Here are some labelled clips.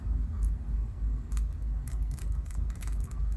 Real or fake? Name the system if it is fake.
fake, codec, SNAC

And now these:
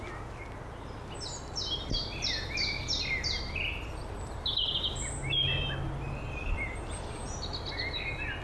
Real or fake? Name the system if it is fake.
real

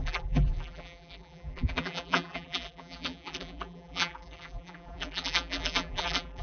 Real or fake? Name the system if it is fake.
fake, vocoder, BigVGAN v2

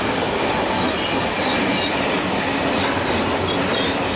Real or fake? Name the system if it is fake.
real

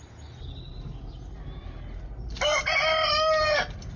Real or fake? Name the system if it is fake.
real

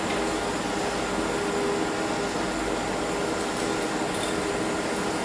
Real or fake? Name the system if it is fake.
real